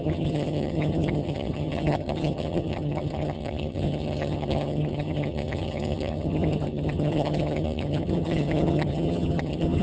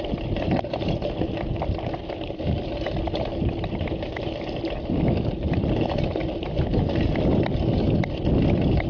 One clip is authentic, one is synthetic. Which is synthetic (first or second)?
first